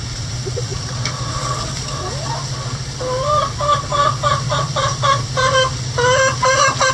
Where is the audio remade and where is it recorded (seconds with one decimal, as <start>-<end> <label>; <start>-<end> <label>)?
0.0-6.9 recorded